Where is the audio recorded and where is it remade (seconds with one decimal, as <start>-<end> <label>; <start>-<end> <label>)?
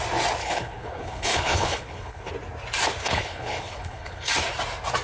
0.0-0.4 recorded; 0.4-2.3 remade; 2.3-3.0 recorded; 3.0-4.3 remade; 4.3-5.0 recorded